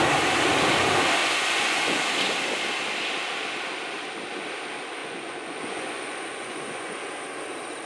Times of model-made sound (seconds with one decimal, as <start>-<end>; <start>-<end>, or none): 1.2-2.0; 5.0-7.0